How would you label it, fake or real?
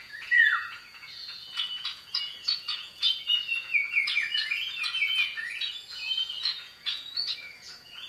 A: fake